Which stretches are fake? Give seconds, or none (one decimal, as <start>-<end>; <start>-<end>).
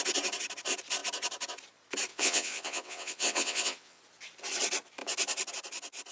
2.1-4.0